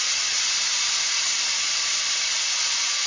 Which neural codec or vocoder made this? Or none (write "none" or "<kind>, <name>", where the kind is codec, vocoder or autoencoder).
none